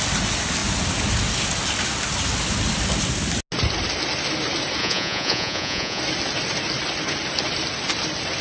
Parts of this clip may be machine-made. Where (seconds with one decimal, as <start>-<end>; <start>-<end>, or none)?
4.8-6.0